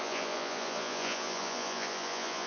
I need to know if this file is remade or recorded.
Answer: remade